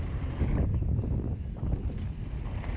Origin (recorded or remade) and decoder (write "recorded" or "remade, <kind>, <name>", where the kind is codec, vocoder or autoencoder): recorded